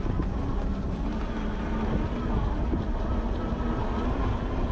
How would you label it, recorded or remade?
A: recorded